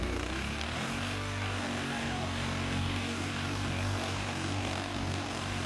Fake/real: fake